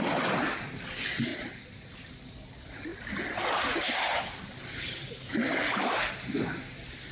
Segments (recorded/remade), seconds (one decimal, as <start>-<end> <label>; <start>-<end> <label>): 0.0-1.3 recorded; 1.3-1.9 remade; 1.9-2.9 recorded; 2.9-5.6 remade; 5.6-7.1 recorded